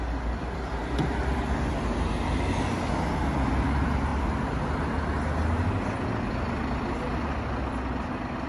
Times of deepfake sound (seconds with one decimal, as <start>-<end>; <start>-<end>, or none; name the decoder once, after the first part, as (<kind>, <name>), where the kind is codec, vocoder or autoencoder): none